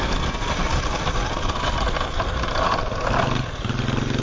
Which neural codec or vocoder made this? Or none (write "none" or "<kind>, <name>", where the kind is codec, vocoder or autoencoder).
none